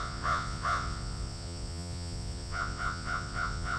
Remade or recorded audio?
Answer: remade